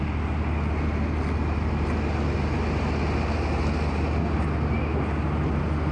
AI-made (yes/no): no